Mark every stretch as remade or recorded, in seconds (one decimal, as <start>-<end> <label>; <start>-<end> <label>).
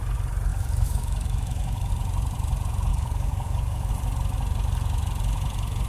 0.0-0.5 recorded; 0.5-1.9 remade; 1.9-2.9 recorded; 2.9-3.9 remade; 3.9-5.9 recorded